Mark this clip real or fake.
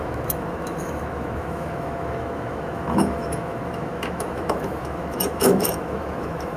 fake